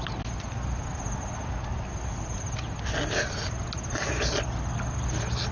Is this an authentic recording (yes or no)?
yes